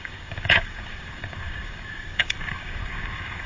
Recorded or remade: remade